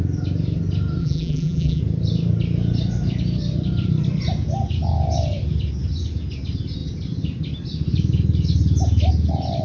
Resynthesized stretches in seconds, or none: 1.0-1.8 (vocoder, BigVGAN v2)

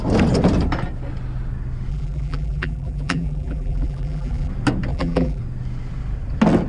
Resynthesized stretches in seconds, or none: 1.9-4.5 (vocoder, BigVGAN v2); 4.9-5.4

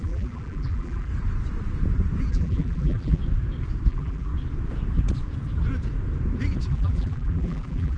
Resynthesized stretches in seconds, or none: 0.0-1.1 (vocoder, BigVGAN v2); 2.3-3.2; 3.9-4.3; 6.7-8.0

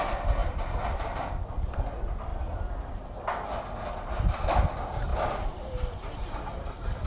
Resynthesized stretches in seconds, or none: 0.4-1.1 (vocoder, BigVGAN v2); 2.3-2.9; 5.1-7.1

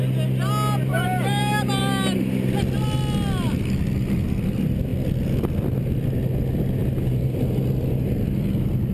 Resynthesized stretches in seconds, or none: 0.9-1.8 (vocoder, BigVGAN v2); 6.8-7.6

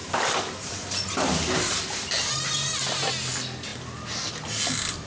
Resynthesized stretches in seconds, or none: 0.0-3.1 (vocoder, BigVGAN v2)